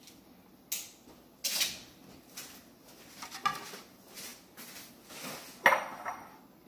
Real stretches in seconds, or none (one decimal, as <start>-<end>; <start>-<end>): 0.0-6.7